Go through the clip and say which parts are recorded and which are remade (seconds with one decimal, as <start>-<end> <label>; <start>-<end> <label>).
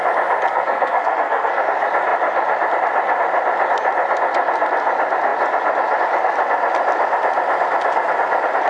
0.0-0.5 recorded; 0.5-1.6 remade; 1.6-8.7 recorded